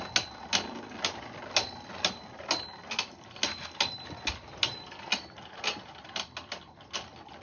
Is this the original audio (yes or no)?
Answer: yes